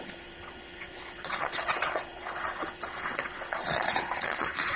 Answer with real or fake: fake